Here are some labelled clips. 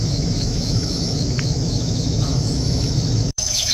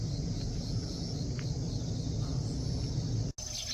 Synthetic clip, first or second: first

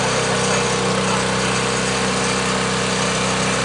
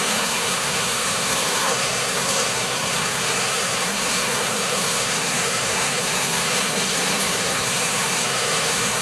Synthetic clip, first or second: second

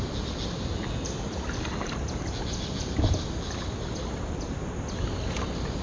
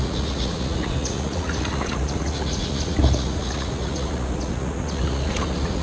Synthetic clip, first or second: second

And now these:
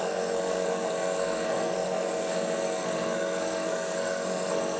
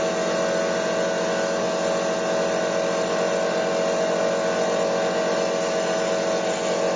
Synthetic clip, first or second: first